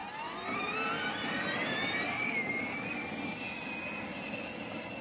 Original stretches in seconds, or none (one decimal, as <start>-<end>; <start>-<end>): 0.0-5.0

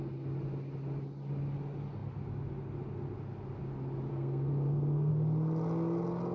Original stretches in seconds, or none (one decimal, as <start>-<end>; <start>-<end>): 0.0-4.1; 5.1-6.3

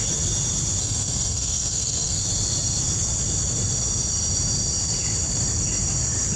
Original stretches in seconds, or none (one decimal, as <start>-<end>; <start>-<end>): 0.0-0.8; 2.2-6.4

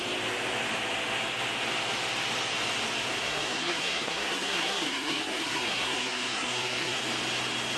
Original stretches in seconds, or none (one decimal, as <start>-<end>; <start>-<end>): 0.0-3.2; 7.0-7.8